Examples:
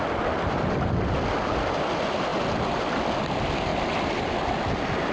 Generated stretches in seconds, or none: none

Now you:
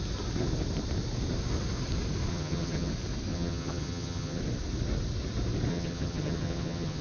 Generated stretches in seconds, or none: 2.3-2.9 (vocoder, HiFi-GAN); 3.3-4.4; 5.7-7.0

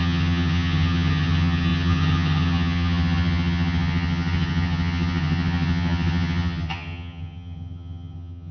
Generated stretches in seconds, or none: 0.0-8.5 (vocoder, HiFi-GAN)